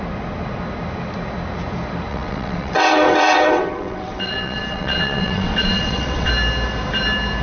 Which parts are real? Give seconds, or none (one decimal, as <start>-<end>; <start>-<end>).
0.0-2.1; 6.3-7.4